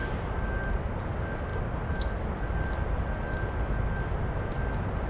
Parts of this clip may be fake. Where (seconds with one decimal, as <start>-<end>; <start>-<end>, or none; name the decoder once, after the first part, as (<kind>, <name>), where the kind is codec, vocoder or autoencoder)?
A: none